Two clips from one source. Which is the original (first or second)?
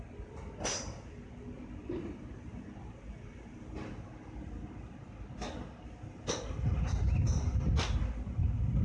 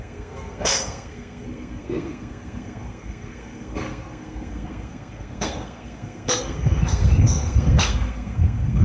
first